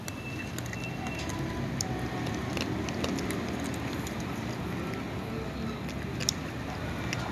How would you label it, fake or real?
real